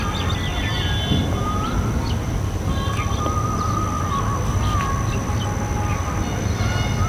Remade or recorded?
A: recorded